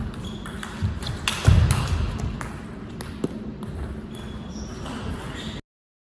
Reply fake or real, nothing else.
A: real